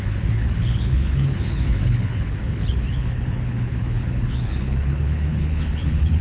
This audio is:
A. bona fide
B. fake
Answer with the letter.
B